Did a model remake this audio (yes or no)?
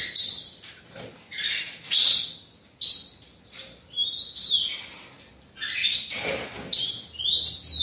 no